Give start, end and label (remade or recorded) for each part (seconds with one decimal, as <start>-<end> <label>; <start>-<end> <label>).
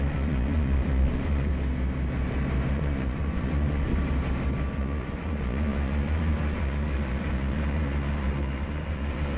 0.0-1.5 remade; 1.5-2.7 recorded; 2.7-3.9 remade; 3.9-4.7 recorded; 4.7-9.4 remade